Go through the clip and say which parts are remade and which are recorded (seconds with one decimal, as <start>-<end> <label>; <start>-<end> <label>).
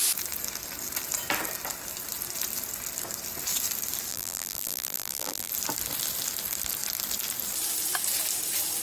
0.0-4.1 recorded; 4.1-5.5 remade; 5.5-8.8 recorded